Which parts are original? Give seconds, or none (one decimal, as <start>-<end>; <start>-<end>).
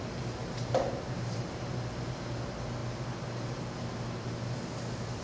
0.0-0.4; 1.7-5.2